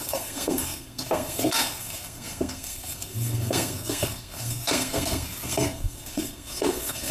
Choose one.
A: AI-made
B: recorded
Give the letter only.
A